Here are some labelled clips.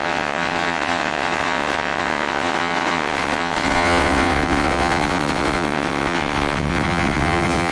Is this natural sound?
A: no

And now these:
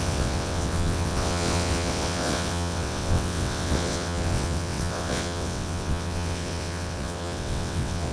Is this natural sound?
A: no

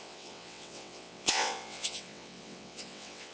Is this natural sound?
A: no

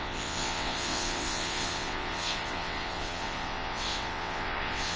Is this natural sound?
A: no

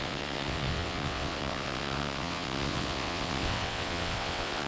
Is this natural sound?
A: no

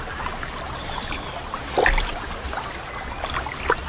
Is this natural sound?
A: yes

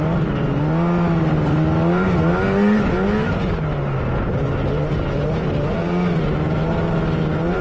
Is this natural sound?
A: yes